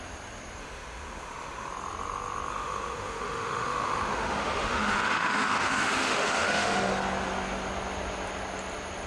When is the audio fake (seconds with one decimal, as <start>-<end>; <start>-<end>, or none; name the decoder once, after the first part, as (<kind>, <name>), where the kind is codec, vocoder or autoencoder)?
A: 0.6-1.7 (autoencoder, DAC-VAE); 2.5-6.9